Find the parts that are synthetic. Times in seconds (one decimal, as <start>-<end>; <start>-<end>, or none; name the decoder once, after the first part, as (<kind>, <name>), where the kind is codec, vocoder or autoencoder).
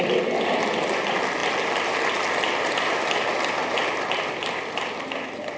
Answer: none